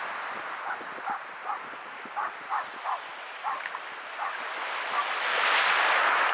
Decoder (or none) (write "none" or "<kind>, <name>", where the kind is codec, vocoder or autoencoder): none